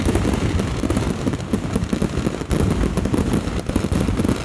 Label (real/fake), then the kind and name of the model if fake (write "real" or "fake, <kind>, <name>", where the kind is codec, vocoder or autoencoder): real